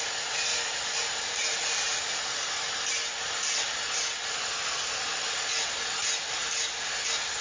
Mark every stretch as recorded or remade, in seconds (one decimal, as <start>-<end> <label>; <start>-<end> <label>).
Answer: 0.0-0.5 recorded; 0.5-2.5 remade; 2.5-7.4 recorded